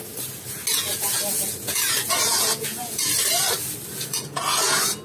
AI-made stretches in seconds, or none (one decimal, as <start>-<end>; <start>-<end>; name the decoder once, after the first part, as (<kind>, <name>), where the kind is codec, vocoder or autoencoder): 0.7-3.1 (vocoder, Vocos); 3.9-5.0